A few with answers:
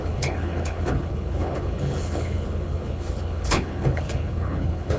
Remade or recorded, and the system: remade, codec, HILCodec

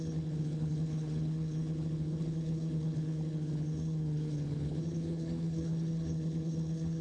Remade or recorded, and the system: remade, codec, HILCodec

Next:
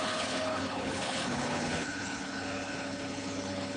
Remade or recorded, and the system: remade, codec, HILCodec